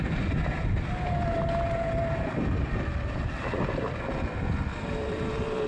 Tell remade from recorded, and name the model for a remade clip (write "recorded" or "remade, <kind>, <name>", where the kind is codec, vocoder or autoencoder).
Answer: recorded